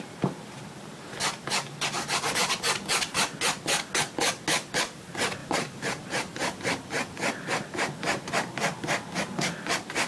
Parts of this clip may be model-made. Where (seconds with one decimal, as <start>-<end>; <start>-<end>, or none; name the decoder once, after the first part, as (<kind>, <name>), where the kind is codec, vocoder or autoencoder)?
5.4-6.6 (vocoder, BigVGAN v2)